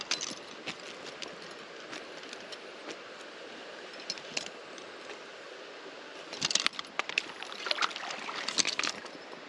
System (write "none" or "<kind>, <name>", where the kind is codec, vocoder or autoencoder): none